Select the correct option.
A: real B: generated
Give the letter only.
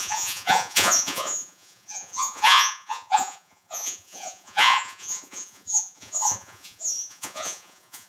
B